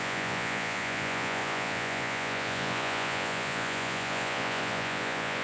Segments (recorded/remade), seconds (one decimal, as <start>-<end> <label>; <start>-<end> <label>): 0.0-5.4 remade